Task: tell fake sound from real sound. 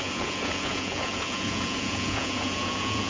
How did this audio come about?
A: fake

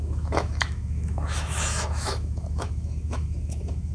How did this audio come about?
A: fake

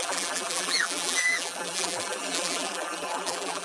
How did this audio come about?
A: fake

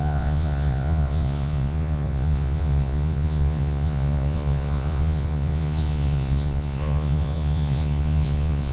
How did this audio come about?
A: fake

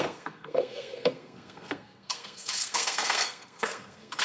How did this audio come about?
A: fake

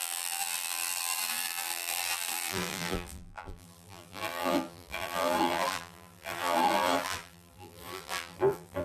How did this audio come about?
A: fake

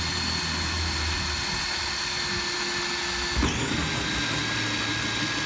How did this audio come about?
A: real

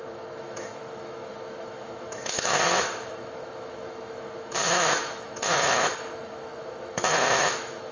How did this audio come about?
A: fake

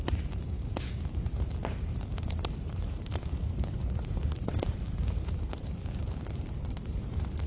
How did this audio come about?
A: fake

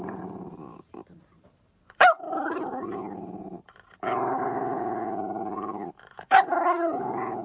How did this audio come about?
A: fake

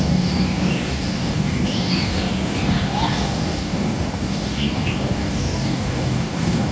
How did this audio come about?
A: fake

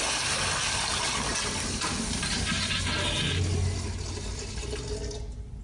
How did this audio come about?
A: real